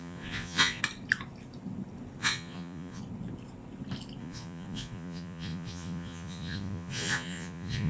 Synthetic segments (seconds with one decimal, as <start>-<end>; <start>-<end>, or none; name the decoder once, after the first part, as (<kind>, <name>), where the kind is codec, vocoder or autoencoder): 0.0-0.8 (vocoder, Vocos); 2.2-3.0; 4.2-7.9